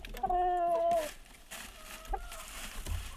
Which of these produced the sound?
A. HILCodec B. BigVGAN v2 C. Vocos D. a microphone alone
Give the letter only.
D